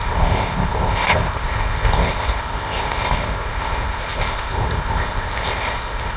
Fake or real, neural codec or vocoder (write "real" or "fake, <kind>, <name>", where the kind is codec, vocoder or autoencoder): fake, codec, ZipCodec